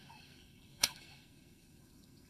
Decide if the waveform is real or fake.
fake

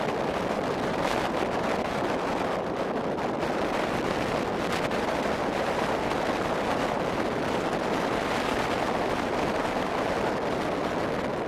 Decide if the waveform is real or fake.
real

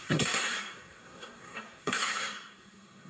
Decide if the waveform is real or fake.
fake